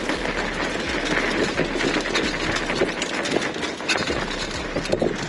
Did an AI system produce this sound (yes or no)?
no